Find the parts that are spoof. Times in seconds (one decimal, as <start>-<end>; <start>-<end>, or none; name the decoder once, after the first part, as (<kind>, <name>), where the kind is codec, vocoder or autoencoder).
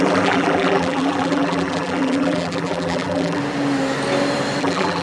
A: 0.0-3.4 (vocoder, BigVGAN v2); 4.6-5.0